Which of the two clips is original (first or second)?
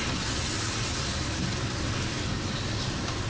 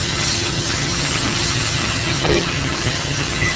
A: first